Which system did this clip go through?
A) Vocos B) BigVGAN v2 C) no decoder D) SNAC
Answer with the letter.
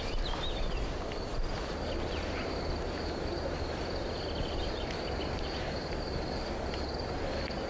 C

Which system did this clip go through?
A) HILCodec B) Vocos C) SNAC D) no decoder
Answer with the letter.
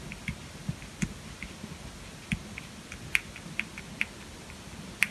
D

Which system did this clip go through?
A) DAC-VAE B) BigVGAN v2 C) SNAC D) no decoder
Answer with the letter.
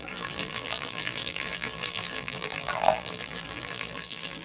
B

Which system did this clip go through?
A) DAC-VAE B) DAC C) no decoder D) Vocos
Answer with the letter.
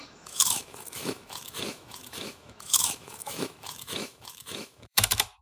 A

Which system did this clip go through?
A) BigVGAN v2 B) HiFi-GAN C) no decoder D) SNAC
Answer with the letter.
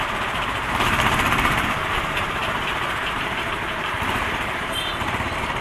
A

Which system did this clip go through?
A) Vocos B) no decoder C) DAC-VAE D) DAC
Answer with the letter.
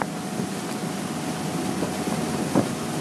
B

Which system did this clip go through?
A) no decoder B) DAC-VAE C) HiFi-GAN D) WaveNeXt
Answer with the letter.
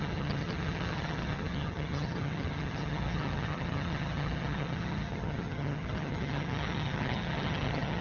C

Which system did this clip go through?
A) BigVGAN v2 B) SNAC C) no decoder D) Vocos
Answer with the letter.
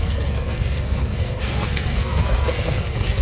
B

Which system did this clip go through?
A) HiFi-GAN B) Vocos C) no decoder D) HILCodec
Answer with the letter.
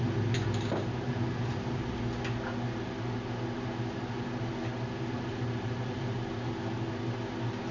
C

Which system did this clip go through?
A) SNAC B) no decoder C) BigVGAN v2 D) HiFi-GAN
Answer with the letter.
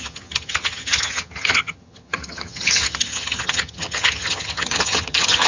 D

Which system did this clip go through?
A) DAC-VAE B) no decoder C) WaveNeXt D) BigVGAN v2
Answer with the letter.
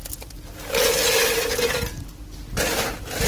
B